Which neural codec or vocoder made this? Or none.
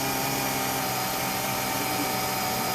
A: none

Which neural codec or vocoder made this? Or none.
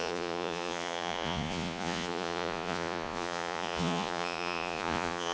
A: vocoder, Vocos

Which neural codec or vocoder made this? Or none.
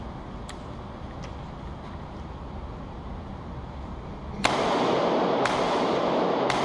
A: none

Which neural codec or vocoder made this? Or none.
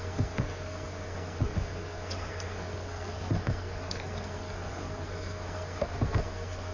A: codec, SNAC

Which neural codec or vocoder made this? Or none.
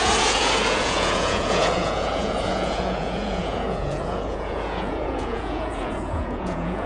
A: vocoder, Vocos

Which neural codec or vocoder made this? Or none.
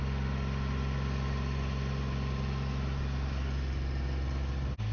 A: none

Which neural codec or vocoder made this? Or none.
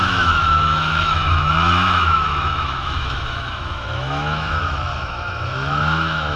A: autoencoder, DAC-VAE